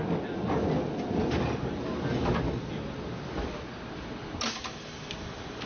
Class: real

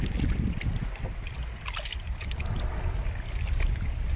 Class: real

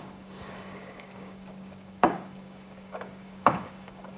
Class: fake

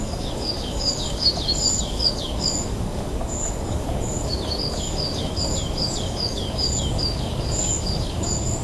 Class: fake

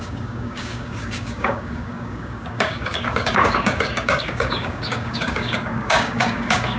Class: fake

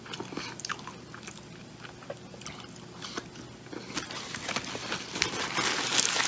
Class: real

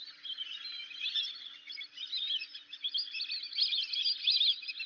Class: real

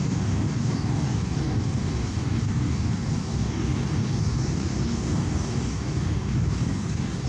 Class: fake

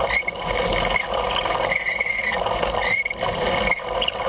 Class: real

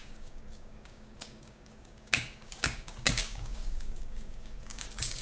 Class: fake